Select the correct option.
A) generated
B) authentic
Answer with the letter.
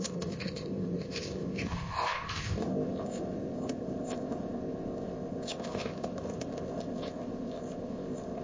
A